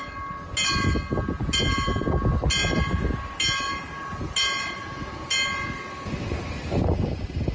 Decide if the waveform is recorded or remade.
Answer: recorded